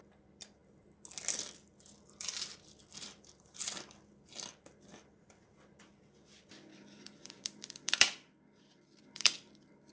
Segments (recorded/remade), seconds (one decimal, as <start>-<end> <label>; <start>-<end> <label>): 0.0-0.6 remade; 0.6-3.0 recorded; 3.0-9.9 remade